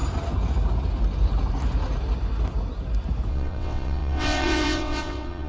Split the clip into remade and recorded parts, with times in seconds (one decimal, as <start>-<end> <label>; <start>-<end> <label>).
0.0-3.3 recorded; 3.3-5.5 remade